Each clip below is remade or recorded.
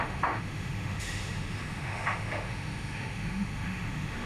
remade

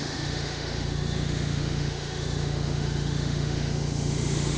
remade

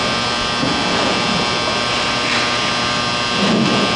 recorded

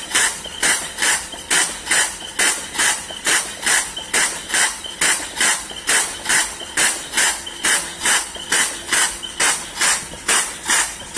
recorded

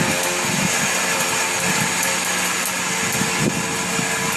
recorded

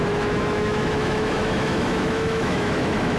remade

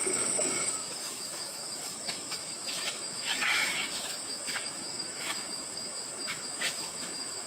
remade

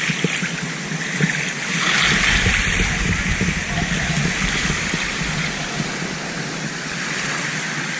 recorded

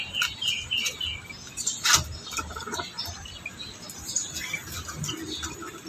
recorded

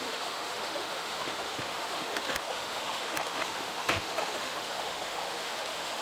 remade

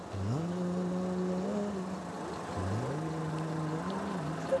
recorded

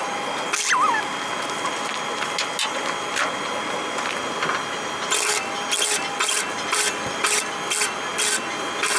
recorded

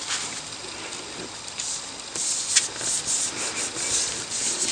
recorded